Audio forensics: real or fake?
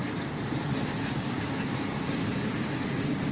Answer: real